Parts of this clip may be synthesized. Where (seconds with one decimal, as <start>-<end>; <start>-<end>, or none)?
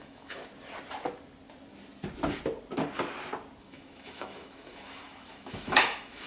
0.0-0.4; 3.6-6.3